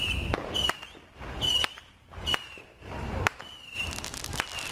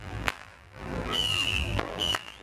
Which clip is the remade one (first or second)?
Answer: second